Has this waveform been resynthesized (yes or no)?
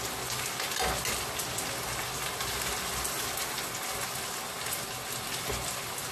no